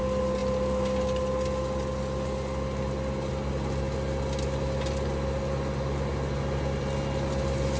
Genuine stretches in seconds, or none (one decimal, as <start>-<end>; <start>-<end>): 0.0-7.8